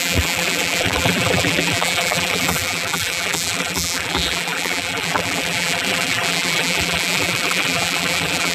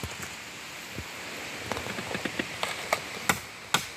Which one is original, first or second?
second